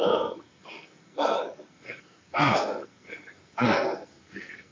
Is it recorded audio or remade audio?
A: remade